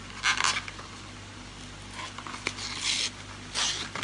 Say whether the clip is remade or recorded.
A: recorded